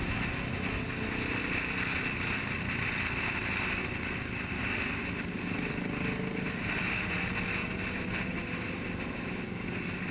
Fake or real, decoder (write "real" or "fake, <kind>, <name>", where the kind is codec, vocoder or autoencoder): real